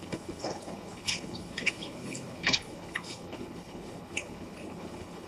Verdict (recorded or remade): remade